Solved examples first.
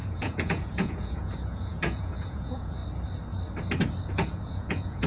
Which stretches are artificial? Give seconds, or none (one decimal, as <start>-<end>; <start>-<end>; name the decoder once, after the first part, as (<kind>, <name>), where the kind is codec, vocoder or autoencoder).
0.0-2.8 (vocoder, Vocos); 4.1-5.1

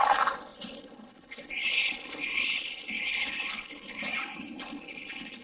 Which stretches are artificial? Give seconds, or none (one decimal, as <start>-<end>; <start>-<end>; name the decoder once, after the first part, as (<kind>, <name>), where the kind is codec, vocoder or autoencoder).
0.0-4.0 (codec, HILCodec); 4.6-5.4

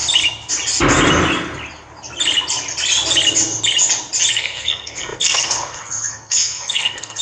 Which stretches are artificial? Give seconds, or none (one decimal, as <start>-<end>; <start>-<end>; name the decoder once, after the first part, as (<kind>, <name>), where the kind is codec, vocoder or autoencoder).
4.3-7.2 (codec, SNAC)